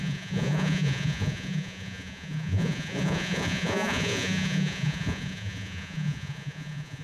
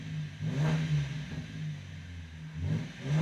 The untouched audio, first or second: second